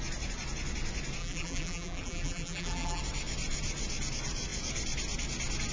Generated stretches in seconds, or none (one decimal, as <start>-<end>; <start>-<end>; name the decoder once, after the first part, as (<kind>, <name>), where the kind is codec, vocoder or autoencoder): 1.2-3.0 (vocoder, BigVGAN v2)